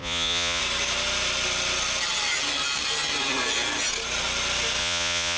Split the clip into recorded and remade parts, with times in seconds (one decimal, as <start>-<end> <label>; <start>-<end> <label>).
0.0-0.6 remade; 0.6-4.8 recorded; 4.8-5.4 remade